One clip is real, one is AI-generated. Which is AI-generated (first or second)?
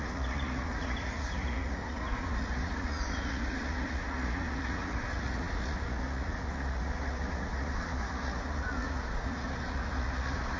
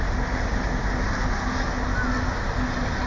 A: first